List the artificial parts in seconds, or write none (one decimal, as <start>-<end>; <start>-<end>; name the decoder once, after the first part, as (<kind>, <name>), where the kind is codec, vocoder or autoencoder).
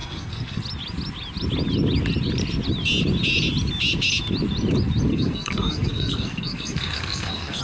0.0-0.6 (codec, SNAC); 5.1-7.6